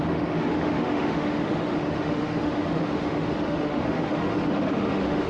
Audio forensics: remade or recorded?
remade